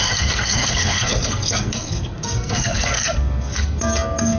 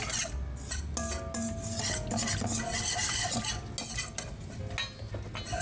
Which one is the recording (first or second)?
second